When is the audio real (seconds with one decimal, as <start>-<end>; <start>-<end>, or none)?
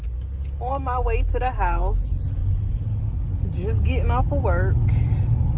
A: 0.0-5.6